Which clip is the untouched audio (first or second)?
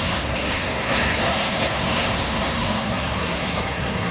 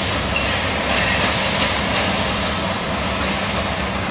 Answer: second